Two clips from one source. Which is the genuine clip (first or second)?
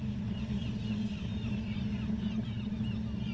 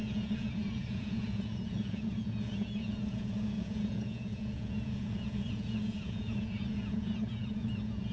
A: first